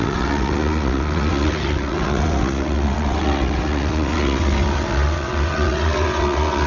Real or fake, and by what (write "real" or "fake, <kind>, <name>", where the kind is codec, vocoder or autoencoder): fake, vocoder, WaveNeXt